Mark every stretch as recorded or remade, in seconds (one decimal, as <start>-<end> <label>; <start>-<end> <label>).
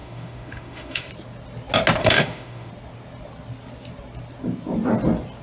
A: 0.0-1.1 remade; 1.1-2.0 recorded; 2.0-2.7 remade; 2.7-5.4 recorded